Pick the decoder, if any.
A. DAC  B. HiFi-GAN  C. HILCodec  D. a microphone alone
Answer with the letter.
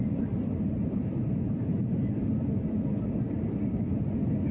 D